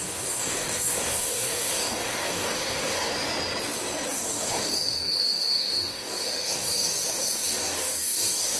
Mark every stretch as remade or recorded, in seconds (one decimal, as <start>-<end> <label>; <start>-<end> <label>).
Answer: 0.0-3.1 remade; 3.1-4.1 recorded; 4.1-8.6 remade